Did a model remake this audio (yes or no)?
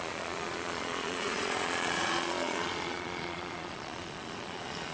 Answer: yes